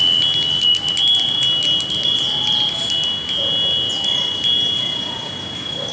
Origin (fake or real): real